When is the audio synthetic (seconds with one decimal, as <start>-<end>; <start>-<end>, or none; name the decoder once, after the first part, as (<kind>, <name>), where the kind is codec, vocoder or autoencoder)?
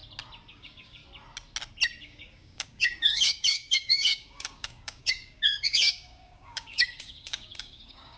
0.5-1.0 (codec, DAC); 2.0-8.2